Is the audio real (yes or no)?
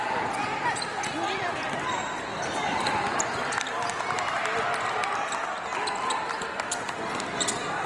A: yes